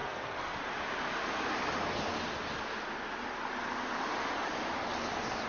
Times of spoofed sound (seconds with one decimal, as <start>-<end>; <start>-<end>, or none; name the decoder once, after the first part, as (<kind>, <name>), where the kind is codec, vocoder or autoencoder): 0.0-0.6 (codec, SNAC)

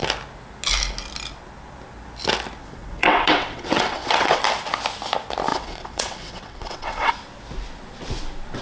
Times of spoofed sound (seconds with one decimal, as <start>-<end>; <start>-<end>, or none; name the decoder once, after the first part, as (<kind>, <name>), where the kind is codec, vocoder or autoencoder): 2.6-4.4 (vocoder, WaveNeXt); 5.5-7.1

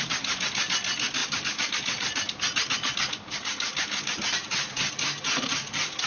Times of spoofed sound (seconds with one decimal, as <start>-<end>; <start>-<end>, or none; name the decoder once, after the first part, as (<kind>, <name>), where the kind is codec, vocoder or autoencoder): none

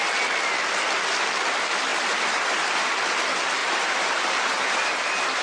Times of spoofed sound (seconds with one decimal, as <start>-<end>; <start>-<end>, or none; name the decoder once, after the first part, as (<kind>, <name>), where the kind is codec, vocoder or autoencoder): 1.9-2.9 (vocoder, BigVGAN v2); 3.6-5.4